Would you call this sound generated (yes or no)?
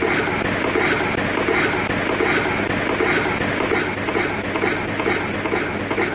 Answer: no